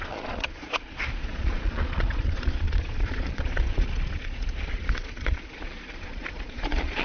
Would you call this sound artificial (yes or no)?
yes